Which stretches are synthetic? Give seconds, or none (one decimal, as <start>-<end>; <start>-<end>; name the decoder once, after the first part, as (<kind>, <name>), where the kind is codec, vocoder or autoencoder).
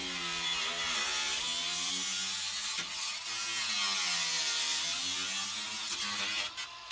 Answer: none